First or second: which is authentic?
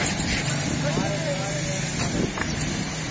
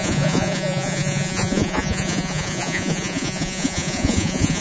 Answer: first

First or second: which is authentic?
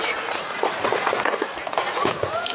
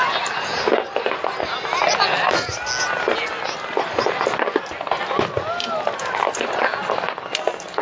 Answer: second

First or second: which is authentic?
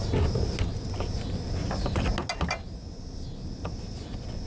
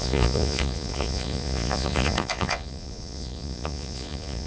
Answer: first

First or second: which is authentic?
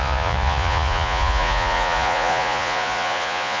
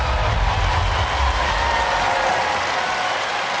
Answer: second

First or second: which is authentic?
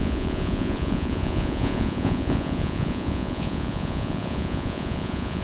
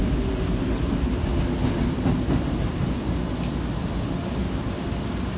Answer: second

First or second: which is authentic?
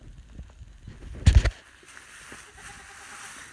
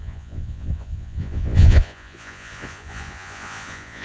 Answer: first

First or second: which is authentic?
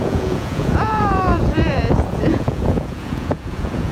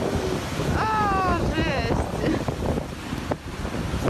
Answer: second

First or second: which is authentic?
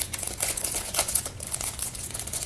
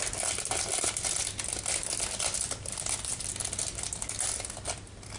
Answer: second